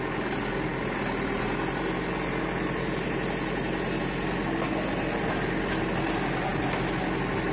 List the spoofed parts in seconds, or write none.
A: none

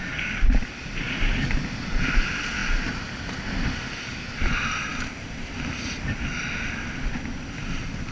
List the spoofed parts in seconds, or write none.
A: none

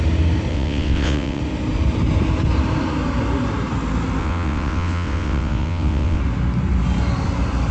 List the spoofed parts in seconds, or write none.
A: 0.5-1.4 (vocoder, WaveNeXt); 4.2-6.2

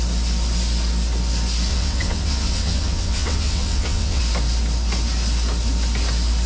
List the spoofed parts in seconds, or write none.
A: 1.7-4.2 (vocoder, WaveNeXt)